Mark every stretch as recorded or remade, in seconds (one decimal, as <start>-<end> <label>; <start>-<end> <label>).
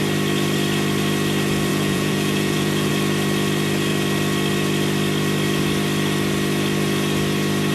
0.0-1.7 recorded; 1.7-2.9 remade; 2.9-7.7 recorded